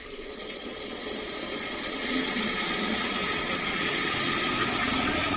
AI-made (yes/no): yes